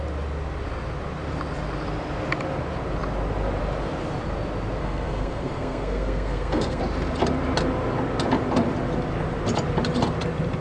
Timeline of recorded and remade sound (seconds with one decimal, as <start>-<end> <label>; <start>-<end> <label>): 0.0-4.8 recorded; 4.8-6.8 remade; 6.8-10.6 recorded